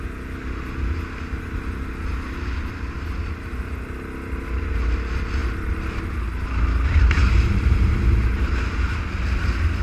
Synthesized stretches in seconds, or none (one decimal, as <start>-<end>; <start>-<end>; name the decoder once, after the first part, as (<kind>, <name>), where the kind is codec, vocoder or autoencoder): none

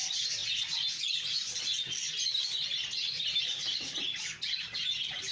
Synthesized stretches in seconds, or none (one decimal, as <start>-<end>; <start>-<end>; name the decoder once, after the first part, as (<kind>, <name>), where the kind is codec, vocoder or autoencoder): none

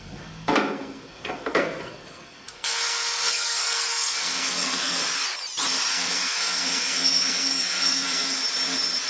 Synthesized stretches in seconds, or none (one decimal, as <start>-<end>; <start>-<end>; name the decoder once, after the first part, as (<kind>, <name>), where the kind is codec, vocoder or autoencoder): 0.0-5.0 (codec, SNAC); 5.9-8.4

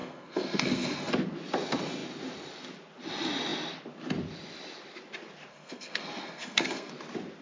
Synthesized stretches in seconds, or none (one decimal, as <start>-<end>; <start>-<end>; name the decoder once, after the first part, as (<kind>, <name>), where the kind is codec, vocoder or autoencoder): 0.0-1.1 (codec, SNAC); 5.5-6.9

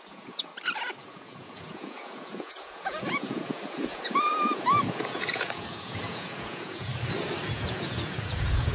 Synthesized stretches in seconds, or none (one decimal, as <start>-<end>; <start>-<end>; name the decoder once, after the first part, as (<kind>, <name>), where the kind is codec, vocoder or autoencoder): 0.0-0.5 (vocoder, Vocos); 1.0-6.9; 7.5-8.7